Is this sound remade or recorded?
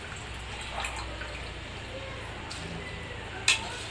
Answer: recorded